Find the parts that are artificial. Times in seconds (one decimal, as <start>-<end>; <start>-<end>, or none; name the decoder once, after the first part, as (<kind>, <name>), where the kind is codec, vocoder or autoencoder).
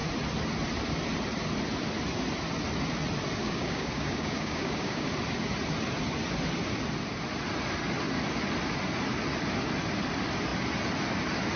3.4-5.1 (codec, DAC)